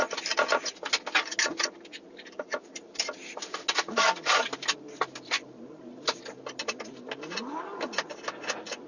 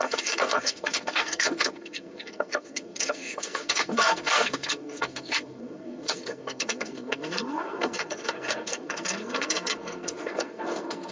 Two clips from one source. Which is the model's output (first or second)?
second